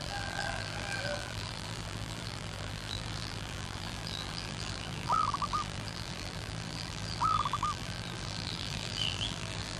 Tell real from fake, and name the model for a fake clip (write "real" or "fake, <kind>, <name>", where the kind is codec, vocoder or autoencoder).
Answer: fake, vocoder, BigVGAN v2